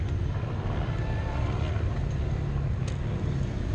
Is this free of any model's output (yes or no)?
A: yes